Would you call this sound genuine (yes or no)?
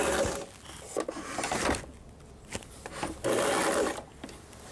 yes